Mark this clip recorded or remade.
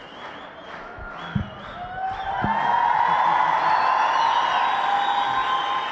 recorded